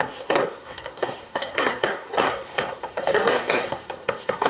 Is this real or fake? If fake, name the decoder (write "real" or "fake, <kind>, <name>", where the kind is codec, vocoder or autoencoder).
fake, codec, SNAC